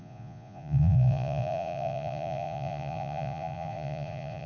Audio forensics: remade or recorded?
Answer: remade